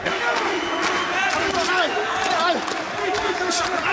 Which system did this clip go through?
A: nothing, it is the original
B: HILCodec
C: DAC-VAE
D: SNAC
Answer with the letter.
A